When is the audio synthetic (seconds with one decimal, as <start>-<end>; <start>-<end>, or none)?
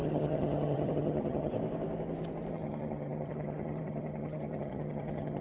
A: 0.0-1.5; 2.5-5.4